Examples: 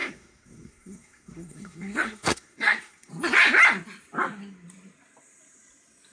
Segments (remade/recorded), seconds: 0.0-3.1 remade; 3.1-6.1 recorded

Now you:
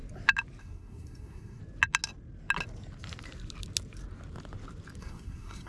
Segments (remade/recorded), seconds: 0.0-0.6 recorded; 0.6-1.6 remade; 1.6-5.0 recorded; 5.0-5.7 remade

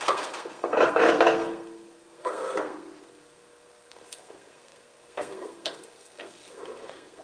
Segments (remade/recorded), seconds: 0.0-7.2 remade

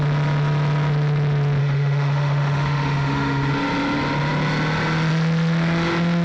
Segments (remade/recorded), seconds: 0.0-1.6 recorded; 1.6-3.5 remade; 3.5-6.2 recorded

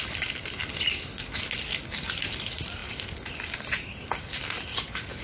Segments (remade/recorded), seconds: 0.0-5.2 recorded

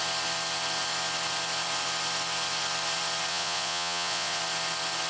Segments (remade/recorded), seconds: 0.0-3.3 recorded; 3.3-4.4 remade; 4.4-5.1 recorded

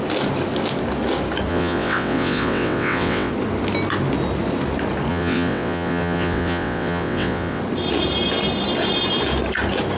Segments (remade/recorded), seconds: 0.0-1.5 recorded; 1.5-3.3 remade; 3.3-5.1 recorded; 5.1-7.6 remade; 7.6-10.0 recorded